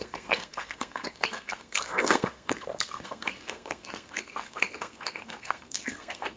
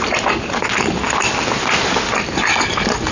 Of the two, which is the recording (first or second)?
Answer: second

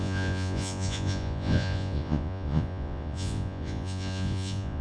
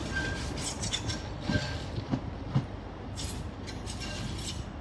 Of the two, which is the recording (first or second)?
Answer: second